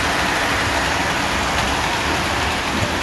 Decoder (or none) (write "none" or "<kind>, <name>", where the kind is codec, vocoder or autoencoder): none